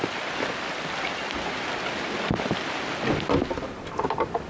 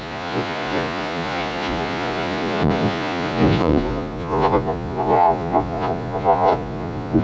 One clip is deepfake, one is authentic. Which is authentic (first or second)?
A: first